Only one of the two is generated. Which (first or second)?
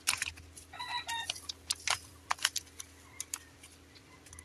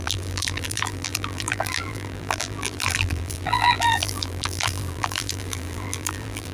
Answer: second